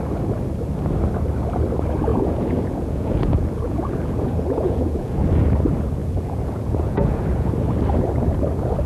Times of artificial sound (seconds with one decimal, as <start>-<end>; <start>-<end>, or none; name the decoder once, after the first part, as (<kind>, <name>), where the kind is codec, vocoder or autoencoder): 2.1-5.3 (vocoder, Vocos); 6.0-7.5